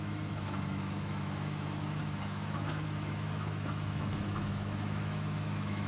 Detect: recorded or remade remade